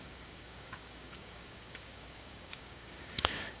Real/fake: fake